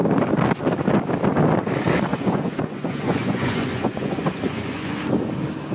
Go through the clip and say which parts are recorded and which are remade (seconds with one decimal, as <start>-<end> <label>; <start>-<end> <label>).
0.0-2.1 recorded; 2.1-5.0 remade; 5.0-5.7 recorded